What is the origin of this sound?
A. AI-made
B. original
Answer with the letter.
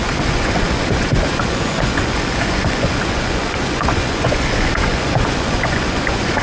A